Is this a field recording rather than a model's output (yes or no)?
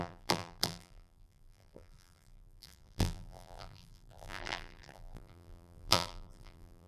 no